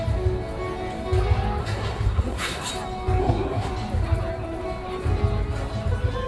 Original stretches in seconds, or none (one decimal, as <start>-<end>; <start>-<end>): 0.0-1.6; 2.7-3.2; 3.7-6.3